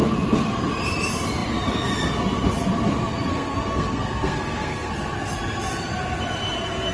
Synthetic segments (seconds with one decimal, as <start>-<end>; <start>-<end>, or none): 3.3-4.9